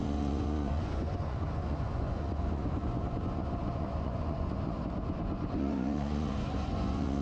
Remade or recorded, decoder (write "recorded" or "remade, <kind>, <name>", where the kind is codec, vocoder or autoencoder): remade, vocoder, Vocos